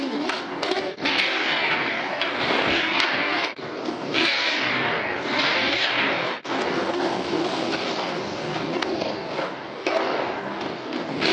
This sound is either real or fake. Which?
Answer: fake